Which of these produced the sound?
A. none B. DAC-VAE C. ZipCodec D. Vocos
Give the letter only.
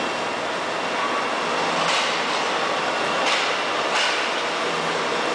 A